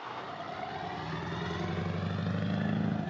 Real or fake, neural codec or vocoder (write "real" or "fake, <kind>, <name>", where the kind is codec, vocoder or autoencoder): real